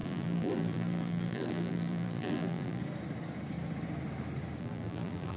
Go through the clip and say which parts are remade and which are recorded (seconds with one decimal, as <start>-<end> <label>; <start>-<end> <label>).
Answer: 0.0-2.8 remade; 2.8-4.6 recorded; 4.6-5.4 remade